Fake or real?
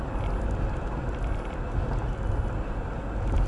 real